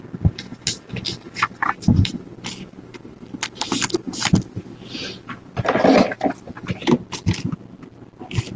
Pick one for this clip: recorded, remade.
recorded